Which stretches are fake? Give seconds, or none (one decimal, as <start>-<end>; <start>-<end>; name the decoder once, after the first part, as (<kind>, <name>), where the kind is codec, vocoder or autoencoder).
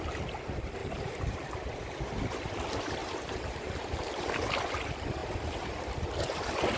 0.8-1.5 (vocoder, BigVGAN v2); 3.0-4.6; 5.2-5.8